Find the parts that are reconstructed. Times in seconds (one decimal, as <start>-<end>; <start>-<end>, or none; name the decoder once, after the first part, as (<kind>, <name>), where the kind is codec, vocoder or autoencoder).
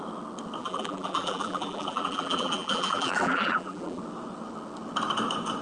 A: 0.6-4.0 (vocoder, BigVGAN v2)